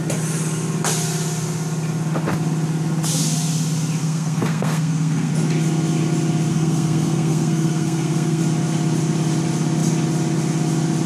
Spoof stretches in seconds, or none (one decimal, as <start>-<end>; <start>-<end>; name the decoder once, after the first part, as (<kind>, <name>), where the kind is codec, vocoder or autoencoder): 4.0-5.3 (codec, SNAC); 6.5-8.4